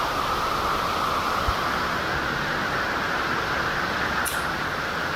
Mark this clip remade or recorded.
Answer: recorded